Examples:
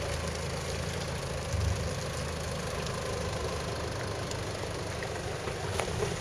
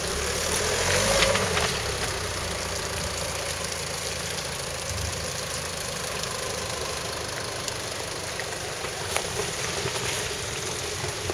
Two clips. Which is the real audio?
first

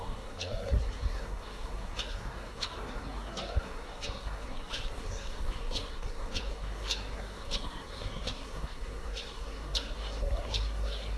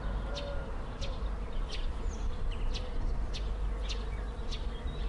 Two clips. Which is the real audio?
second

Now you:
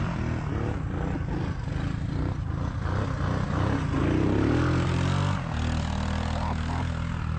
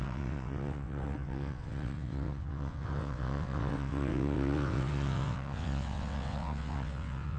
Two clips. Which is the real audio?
first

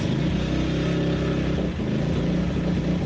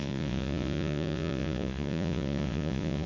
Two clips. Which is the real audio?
first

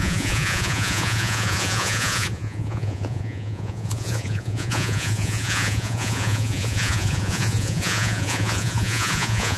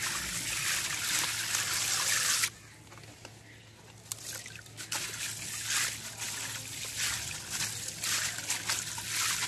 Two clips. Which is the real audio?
second